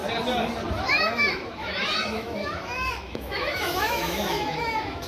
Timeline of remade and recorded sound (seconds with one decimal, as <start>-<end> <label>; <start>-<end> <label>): 0.0-0.9 recorded; 0.9-5.1 remade